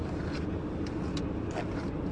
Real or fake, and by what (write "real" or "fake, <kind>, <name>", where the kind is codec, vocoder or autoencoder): real